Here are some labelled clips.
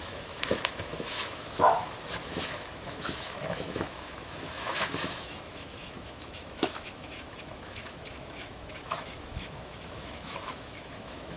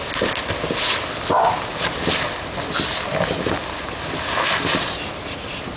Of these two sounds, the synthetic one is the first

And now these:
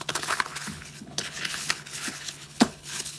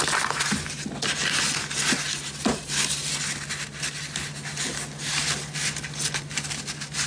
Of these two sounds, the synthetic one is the first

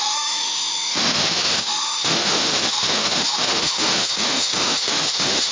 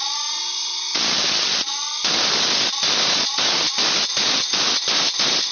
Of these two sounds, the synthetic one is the first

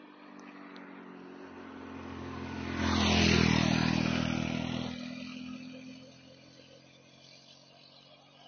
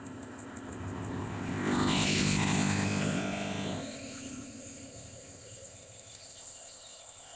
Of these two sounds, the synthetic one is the second